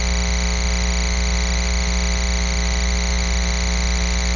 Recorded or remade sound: recorded